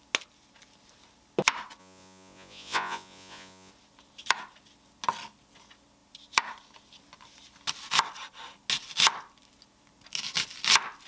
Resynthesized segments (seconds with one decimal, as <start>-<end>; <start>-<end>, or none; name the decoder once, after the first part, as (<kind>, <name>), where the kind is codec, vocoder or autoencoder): 1.8-3.7 (vocoder, Vocos)